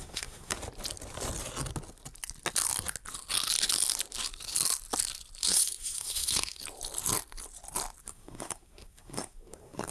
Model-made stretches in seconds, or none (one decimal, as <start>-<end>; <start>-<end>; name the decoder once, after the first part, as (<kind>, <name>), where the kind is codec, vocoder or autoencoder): 0.0-0.5 (codec, SNAC); 5.4-6.6; 8.0-9.9